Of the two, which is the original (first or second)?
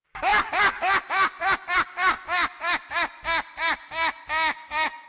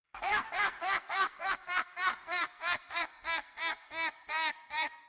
first